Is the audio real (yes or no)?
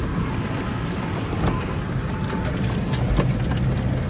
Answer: yes